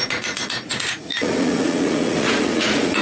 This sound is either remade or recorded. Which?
remade